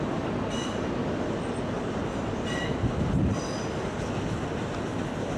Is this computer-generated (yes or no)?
no